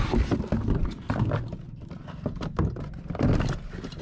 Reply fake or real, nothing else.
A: real